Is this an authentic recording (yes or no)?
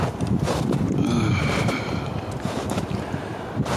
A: yes